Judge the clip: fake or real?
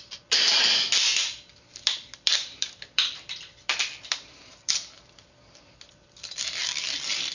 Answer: fake